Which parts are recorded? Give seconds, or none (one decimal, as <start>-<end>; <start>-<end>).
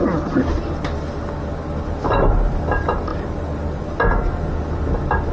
0.0-5.3